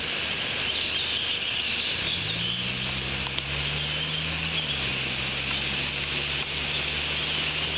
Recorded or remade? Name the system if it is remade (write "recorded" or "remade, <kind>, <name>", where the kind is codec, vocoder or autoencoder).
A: recorded